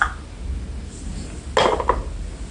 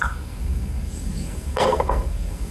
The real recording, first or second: first